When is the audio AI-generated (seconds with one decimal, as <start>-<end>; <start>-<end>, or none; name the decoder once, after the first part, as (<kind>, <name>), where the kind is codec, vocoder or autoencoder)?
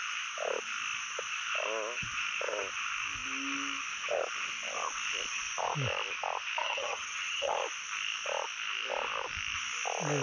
6.6-7.5 (vocoder, HiFi-GAN)